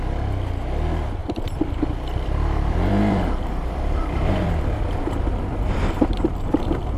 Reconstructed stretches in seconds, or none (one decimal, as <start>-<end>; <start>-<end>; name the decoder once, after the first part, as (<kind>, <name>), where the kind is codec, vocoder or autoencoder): 1.2-5.1 (vocoder, BigVGAN v2)